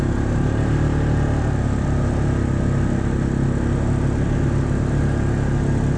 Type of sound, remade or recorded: recorded